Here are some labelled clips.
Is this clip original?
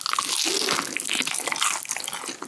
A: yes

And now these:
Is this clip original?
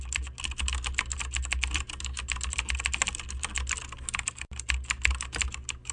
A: yes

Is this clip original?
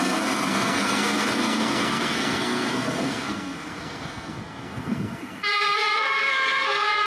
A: no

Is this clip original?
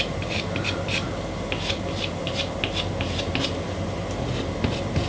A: yes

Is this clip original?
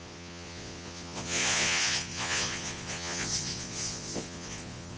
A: no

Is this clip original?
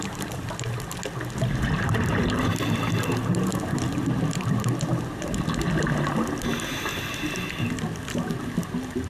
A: yes